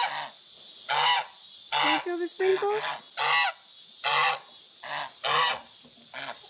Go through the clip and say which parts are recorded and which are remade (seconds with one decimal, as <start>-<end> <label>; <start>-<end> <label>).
0.0-6.5 recorded